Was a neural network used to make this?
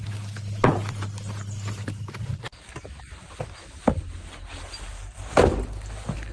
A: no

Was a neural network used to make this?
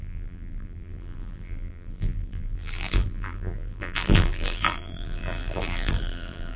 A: yes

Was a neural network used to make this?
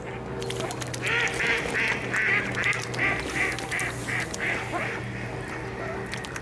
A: no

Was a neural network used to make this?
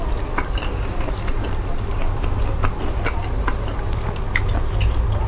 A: no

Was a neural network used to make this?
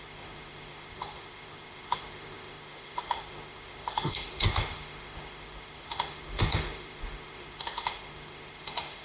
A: yes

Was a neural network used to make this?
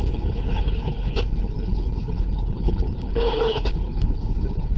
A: yes